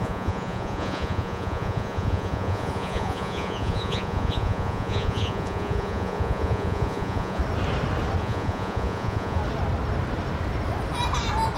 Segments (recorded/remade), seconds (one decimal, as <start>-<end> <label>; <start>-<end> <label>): 0.0-7.4 remade; 7.4-8.2 recorded; 8.2-9.4 remade; 9.4-11.6 recorded